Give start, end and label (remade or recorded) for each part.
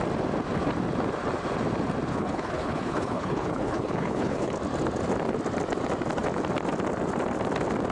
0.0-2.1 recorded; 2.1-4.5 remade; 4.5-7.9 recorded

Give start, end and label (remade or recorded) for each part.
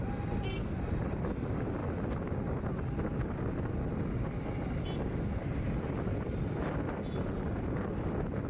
0.0-8.5 recorded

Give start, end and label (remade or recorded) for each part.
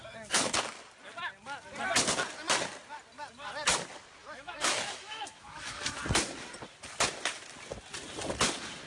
0.0-4.2 recorded; 4.2-5.8 remade; 5.8-8.9 recorded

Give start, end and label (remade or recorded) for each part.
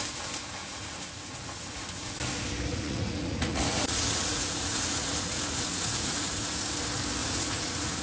0.0-0.6 recorded; 0.6-2.2 remade; 2.2-2.7 recorded; 2.7-6.7 remade; 6.7-7.2 recorded; 7.2-8.0 remade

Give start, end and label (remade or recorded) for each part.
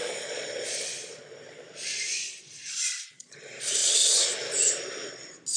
0.0-3.4 remade; 3.4-5.6 recorded